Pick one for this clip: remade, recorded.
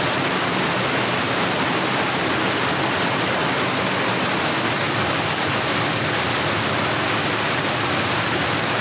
recorded